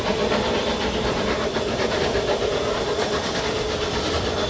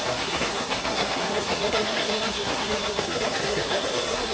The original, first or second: first